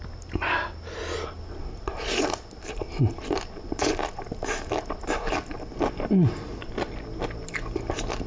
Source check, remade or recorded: recorded